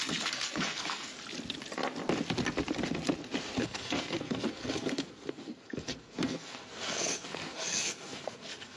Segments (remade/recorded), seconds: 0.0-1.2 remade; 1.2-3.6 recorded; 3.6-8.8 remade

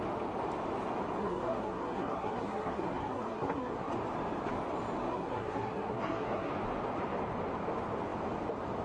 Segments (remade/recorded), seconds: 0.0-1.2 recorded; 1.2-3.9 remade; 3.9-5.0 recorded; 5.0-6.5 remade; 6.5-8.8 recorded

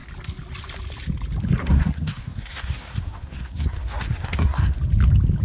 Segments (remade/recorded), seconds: 0.0-1.6 recorded; 1.6-4.8 remade; 4.8-5.4 recorded

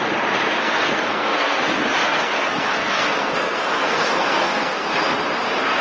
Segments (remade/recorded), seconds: 0.0-0.6 recorded; 0.6-1.6 remade; 1.6-2.0 recorded; 2.0-4.9 remade; 4.9-5.8 recorded

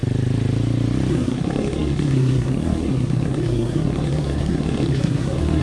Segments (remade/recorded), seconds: 0.0-1.1 recorded; 1.1-5.6 remade